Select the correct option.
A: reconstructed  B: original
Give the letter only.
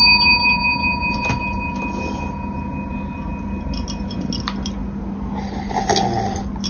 B